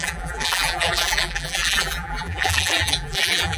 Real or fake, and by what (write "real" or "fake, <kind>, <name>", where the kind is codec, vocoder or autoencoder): fake, vocoder, BigVGAN v2